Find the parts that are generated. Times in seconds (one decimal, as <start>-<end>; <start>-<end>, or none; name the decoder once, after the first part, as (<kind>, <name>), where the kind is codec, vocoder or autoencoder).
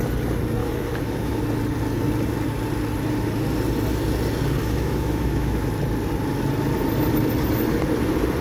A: 0.6-1.4 (autoencoder, DAC-VAE); 4.6-5.7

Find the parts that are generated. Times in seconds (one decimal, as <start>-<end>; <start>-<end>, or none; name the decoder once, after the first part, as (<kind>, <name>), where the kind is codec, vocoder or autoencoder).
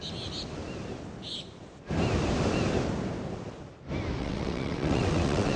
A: 4.2-5.6 (vocoder, WaveNeXt)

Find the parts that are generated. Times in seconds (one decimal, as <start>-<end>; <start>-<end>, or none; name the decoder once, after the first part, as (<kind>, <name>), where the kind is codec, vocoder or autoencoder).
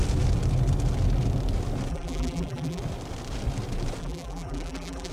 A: 1.9-2.8 (vocoder, BigVGAN v2); 4.0-5.1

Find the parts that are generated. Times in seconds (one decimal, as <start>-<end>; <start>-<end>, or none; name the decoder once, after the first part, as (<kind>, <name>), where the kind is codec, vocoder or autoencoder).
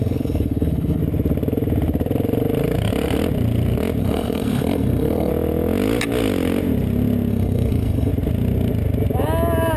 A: 0.0-1.0 (codec, SNAC); 4.0-5.3; 7.3-8.1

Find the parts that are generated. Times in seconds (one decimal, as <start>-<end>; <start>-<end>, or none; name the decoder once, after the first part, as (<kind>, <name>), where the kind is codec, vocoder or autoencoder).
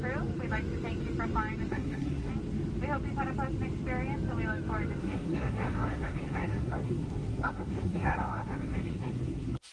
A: 1.7-2.3 (codec, SNAC); 5.0-9.7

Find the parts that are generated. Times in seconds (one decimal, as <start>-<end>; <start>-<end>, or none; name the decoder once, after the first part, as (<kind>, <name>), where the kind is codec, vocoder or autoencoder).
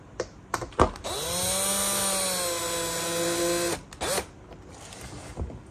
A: none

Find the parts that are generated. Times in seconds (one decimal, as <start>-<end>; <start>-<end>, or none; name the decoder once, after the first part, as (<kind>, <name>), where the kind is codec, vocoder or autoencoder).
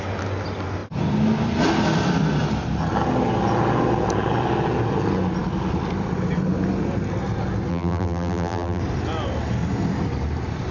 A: 7.7-8.8 (vocoder, BigVGAN v2)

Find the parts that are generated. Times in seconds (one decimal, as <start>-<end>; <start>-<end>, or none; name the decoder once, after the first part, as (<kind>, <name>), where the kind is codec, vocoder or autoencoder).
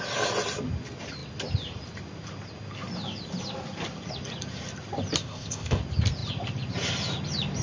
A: 5.2-5.8 (codec, ZipCodec)